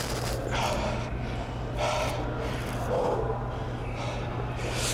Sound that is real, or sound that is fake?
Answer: real